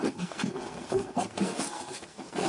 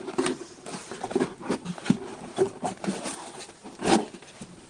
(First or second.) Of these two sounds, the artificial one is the first